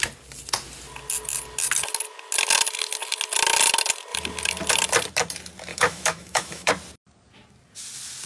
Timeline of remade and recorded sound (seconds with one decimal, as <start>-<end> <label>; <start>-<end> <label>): 0.0-5.7 recorded; 5.7-6.7 remade; 6.7-8.3 recorded